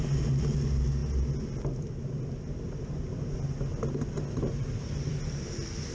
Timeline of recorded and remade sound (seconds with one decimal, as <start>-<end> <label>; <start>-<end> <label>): 0.0-5.9 recorded